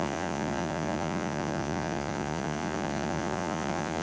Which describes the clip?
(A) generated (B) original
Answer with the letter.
A